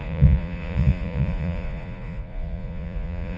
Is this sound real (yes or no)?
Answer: no